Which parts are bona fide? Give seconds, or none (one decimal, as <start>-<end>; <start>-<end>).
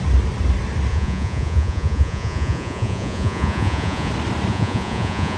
0.0-0.9; 4.1-4.5